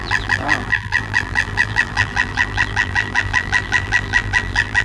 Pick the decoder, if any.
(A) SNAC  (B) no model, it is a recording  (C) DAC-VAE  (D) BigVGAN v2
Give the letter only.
D